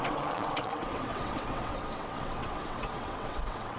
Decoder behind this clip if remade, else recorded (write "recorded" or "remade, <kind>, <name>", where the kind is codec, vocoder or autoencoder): remade, vocoder, WaveNeXt